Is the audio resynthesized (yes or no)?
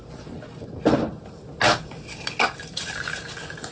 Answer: no